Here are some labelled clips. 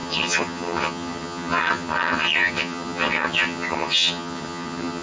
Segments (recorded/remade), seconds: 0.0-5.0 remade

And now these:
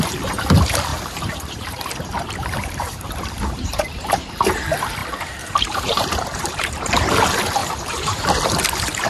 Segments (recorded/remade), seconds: 0.0-0.9 recorded; 0.9-4.1 remade; 4.1-5.0 recorded; 5.0-7.1 remade; 7.1-7.6 recorded; 7.6-8.3 remade; 8.3-9.1 recorded

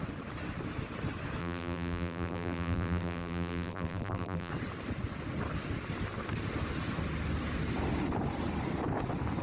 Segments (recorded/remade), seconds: 0.0-1.4 recorded; 1.4-4.5 remade; 4.5-9.4 recorded

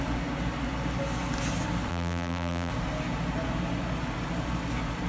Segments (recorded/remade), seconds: 0.0-1.9 recorded; 1.9-2.7 remade; 2.7-5.1 recorded

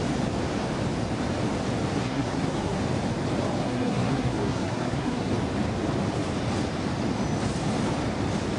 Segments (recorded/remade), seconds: 0.0-1.9 recorded; 1.9-2.8 remade; 2.8-3.6 recorded; 3.6-5.3 remade; 5.3-8.6 recorded

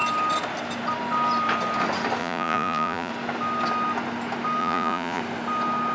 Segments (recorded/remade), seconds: 0.0-2.2 recorded; 2.2-3.1 remade; 3.1-4.6 recorded; 4.6-5.2 remade; 5.2-5.9 recorded